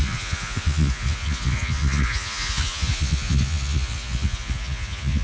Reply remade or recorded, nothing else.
remade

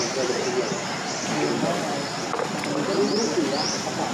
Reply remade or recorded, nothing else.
recorded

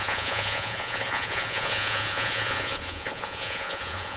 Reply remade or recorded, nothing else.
remade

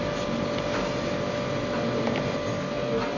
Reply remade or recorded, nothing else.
recorded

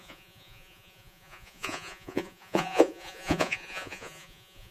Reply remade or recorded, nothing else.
remade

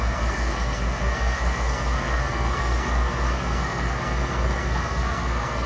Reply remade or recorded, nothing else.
remade